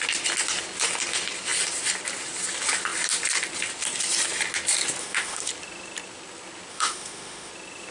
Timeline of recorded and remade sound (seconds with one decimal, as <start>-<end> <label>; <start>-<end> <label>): 0.0-5.0 recorded; 5.0-5.5 remade; 5.5-6.7 recorded; 6.7-7.5 remade; 7.5-7.9 recorded